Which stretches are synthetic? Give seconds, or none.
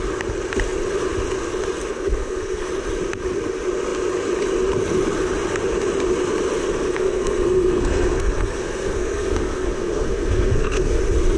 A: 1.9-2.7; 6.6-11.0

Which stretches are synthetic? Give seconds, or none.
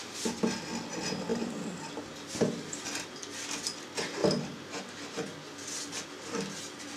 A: none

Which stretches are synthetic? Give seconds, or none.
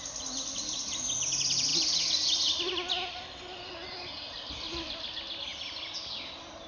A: none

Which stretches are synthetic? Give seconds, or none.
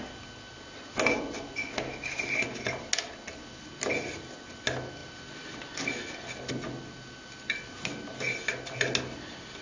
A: none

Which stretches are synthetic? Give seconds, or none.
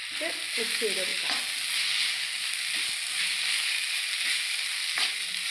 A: none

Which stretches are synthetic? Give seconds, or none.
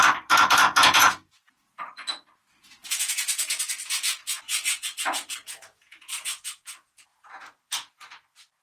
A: 0.6-1.8; 2.8-7.9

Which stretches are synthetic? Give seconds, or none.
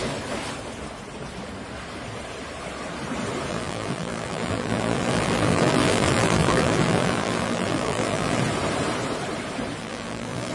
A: 3.5-8.4; 9.8-10.5